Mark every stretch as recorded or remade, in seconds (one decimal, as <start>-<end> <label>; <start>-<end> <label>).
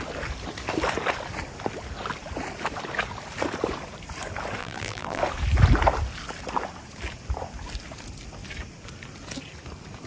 0.0-4.6 recorded; 4.6-5.2 remade; 5.2-10.1 recorded